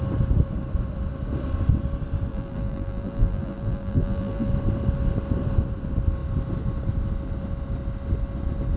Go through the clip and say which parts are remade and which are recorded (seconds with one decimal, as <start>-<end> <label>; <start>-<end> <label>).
0.0-2.3 recorded; 2.3-4.5 remade; 4.5-8.8 recorded